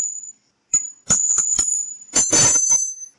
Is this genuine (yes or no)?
yes